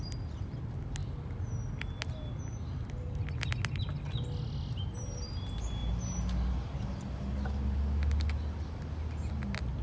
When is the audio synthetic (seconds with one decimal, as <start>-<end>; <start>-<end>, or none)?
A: none